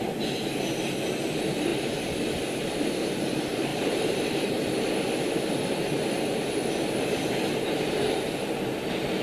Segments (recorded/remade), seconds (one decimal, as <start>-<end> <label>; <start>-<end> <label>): 0.0-3.7 recorded; 3.7-4.9 remade; 4.9-9.2 recorded